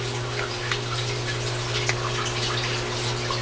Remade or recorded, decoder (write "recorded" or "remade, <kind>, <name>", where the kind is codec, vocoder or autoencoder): recorded